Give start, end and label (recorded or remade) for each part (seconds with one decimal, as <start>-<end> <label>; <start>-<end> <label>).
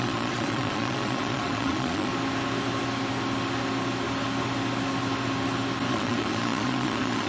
0.0-2.1 remade; 2.1-5.9 recorded; 5.9-7.3 remade